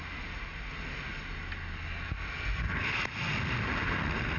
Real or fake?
real